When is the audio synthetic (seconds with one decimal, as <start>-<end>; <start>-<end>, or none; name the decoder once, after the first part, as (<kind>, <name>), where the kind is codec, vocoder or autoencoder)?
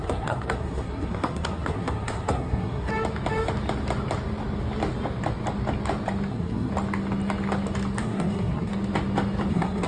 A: 0.0-2.9 (codec, SNAC); 6.3-6.7; 8.0-8.7; 9.5-9.9